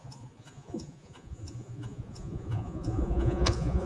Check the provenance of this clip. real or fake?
fake